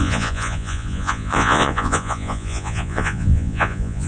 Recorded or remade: remade